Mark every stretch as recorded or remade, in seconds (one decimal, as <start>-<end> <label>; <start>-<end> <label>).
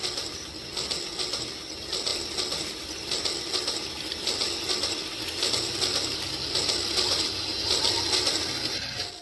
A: 0.0-9.2 recorded